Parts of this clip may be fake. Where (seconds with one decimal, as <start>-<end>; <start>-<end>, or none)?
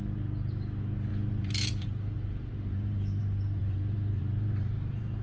1.1-3.2; 3.6-5.2